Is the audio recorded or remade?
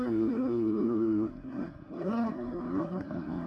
remade